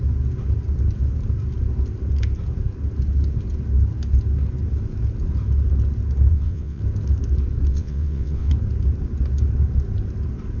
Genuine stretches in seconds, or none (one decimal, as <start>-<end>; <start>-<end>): 0.0-6.3; 6.8-7.7; 8.5-10.6